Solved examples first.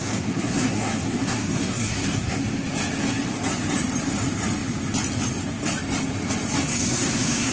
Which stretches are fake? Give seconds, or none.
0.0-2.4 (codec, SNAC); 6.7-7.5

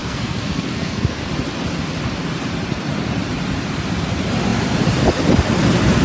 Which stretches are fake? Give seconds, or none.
0.0-1.3 (codec, SNAC)

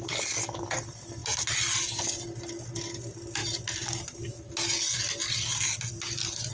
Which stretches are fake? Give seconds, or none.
none

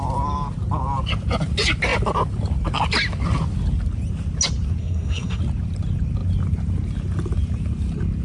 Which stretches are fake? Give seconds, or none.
4.8-5.4 (codec, SNAC)

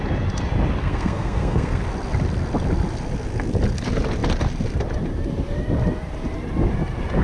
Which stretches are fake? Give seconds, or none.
0.8-1.8 (codec, SNAC)

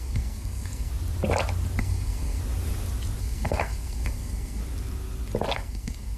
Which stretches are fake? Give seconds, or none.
0.0-0.9 (codec, SNAC); 1.8-2.4; 3.2-4.6; 5.5-6.2